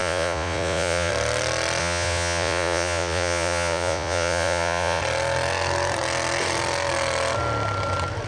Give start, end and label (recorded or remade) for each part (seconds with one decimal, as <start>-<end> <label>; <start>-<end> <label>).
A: 0.0-1.1 remade; 1.1-1.8 recorded; 1.8-5.0 remade; 5.0-8.3 recorded